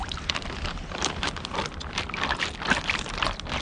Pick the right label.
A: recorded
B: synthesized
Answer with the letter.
A